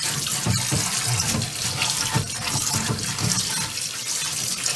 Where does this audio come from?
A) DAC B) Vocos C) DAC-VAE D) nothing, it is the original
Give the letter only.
D